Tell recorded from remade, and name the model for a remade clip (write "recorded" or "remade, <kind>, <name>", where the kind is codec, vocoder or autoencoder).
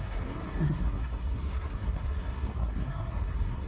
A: remade, codec, SNAC